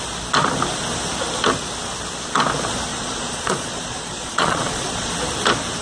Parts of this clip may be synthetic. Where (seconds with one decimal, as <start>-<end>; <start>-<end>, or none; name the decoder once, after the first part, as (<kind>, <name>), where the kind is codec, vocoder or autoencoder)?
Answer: 2.9-5.1 (vocoder, Vocos)